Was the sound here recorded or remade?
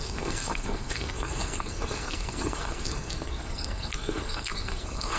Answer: remade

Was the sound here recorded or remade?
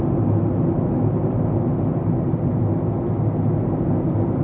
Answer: recorded